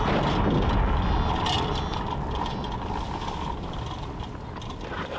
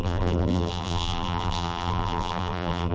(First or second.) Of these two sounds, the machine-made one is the second